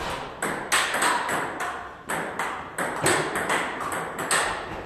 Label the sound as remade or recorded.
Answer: recorded